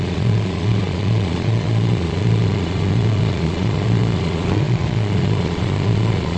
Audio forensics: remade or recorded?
remade